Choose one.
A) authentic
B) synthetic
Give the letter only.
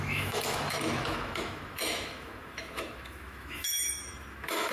B